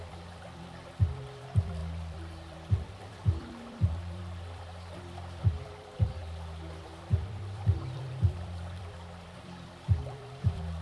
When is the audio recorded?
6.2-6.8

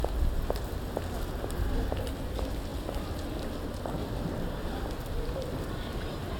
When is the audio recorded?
0.0-6.4

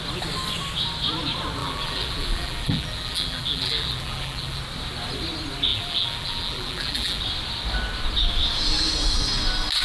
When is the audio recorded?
0.0-1.6; 4.6-5.7; 7.2-9.8

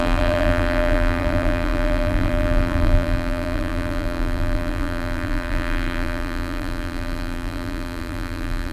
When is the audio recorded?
none

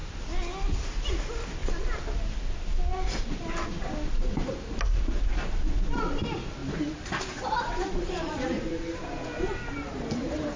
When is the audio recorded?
0.0-6.6

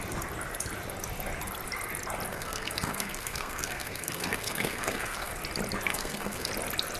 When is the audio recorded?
0.0-2.3; 5.3-5.9; 6.5-7.0

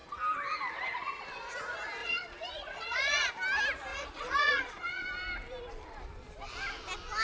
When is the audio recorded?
0.0-2.0; 3.3-3.9; 5.0-7.2